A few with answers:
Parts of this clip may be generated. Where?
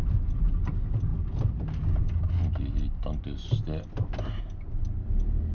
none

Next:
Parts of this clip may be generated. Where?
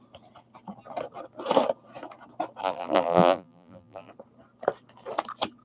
2.6-4.1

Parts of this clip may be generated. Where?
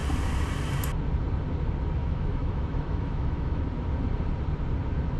2.0-3.6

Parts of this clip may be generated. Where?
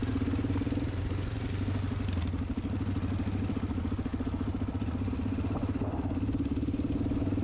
none